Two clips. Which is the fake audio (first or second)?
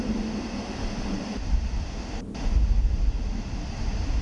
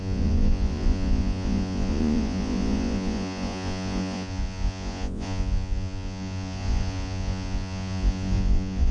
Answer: second